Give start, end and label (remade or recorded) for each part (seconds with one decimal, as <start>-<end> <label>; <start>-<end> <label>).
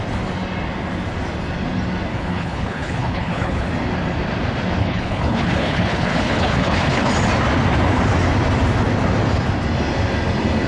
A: 0.0-2.1 recorded; 2.1-3.7 remade; 3.7-4.8 recorded; 4.8-7.1 remade; 7.1-10.7 recorded